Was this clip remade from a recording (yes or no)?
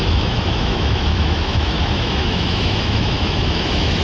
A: yes